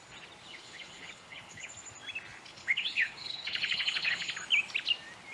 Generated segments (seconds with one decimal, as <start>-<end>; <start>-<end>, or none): 0.5-1.7; 2.5-4.3